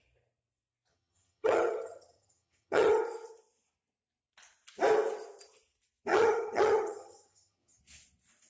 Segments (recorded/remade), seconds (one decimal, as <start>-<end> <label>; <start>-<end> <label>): 0.0-0.9 recorded; 0.9-3.0 remade; 3.0-6.1 recorded; 6.1-7.8 remade; 7.8-8.5 recorded